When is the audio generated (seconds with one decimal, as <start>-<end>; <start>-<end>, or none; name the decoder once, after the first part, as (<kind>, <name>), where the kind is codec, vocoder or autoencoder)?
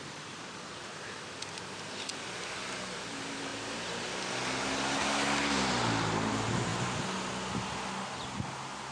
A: 0.0-0.9 (vocoder, BigVGAN v2); 2.1-3.5; 6.3-6.7